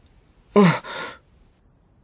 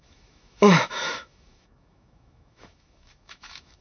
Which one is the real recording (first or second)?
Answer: first